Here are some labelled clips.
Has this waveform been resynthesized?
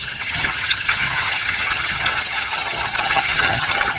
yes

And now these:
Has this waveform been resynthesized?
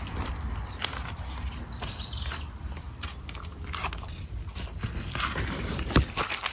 no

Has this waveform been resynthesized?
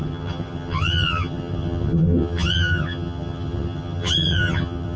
yes